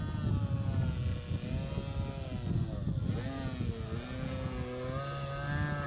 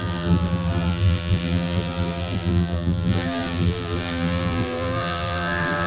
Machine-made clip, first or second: second